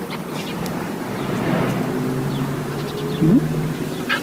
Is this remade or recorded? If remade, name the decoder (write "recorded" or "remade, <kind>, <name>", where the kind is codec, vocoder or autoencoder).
recorded